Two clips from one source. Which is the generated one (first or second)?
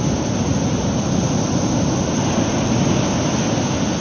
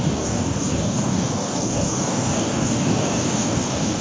second